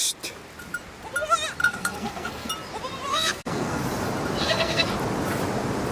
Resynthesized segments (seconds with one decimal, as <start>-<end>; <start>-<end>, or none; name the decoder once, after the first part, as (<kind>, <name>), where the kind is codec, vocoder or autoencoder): 1.6-2.5 (codec, SNAC); 3.1-3.8; 4.4-4.9